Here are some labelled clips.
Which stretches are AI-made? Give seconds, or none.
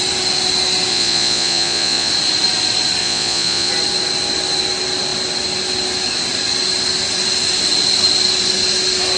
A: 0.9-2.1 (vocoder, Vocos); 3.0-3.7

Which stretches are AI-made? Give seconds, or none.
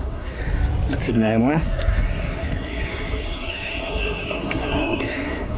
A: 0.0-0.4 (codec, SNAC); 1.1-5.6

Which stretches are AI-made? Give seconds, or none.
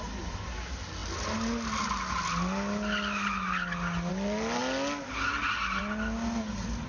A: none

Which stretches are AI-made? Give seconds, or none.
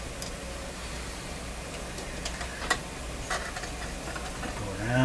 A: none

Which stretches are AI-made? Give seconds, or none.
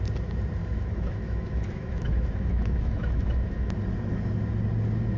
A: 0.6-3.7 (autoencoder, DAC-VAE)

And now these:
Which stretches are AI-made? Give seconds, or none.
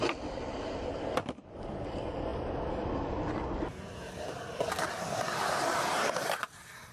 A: none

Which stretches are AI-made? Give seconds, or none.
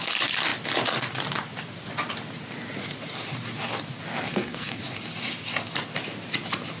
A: 4.3-4.8 (codec, SNAC)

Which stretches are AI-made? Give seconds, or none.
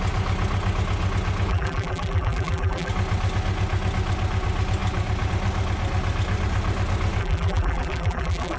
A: 1.5-2.9 (vocoder, BigVGAN v2); 7.2-8.6